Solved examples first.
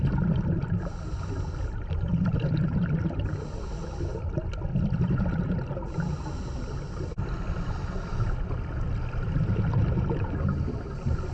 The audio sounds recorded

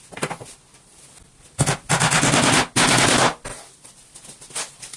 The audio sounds recorded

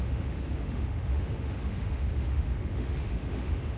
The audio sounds remade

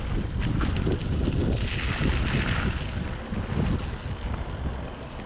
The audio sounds recorded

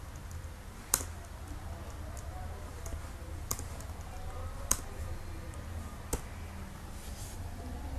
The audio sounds recorded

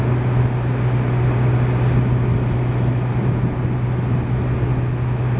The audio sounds recorded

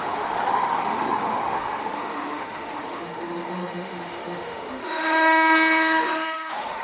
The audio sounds remade